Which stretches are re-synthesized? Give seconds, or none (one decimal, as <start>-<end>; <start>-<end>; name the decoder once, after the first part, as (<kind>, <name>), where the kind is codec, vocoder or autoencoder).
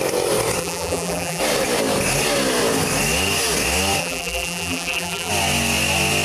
0.6-1.4 (vocoder, BigVGAN v2); 4.0-5.3